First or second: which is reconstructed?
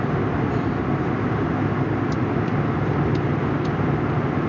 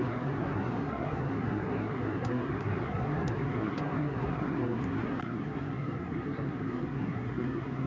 second